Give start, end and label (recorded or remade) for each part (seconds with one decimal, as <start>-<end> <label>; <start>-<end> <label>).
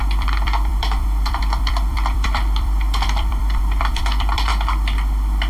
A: 0.0-4.5 remade; 4.5-5.5 recorded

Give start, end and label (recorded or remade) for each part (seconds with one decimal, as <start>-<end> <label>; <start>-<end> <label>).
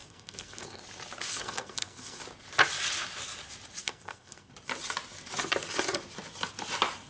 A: 0.0-0.8 remade; 0.8-1.3 recorded; 1.3-2.2 remade; 2.2-3.8 recorded; 3.8-4.5 remade; 4.5-7.1 recorded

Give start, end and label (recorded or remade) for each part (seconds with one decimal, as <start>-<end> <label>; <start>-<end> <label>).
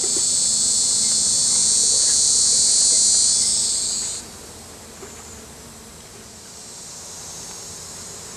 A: 0.0-1.6 remade; 1.6-4.2 recorded; 4.2-8.4 remade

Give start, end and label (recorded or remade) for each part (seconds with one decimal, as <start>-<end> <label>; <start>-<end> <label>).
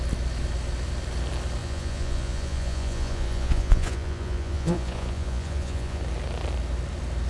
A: 0.0-1.6 recorded; 1.6-6.0 remade; 6.0-7.3 recorded